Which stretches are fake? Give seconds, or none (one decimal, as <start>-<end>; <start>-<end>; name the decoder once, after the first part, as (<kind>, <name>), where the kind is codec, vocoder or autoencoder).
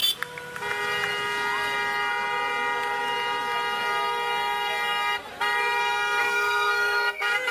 6.2-7.5 (codec, SNAC)